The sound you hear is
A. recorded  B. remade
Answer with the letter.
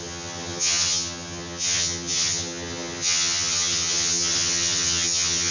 B